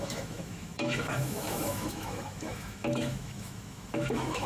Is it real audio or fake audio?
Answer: fake